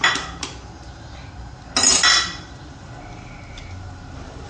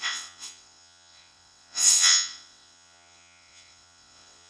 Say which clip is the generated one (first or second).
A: second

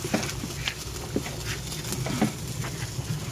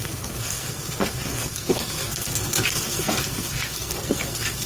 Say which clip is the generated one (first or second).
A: second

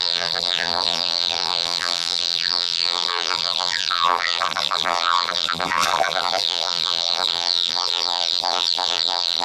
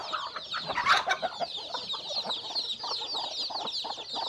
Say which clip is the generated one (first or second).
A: first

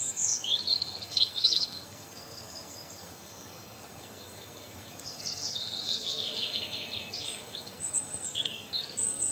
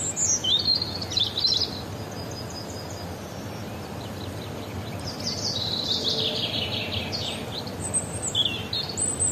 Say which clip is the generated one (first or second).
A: first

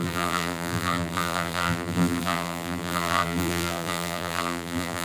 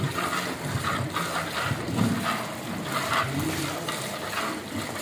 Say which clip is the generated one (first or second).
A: first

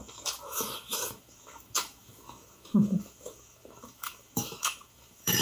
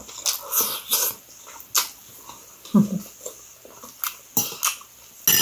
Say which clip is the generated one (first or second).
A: first